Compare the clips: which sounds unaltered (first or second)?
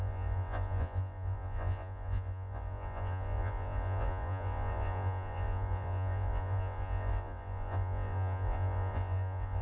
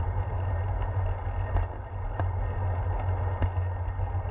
second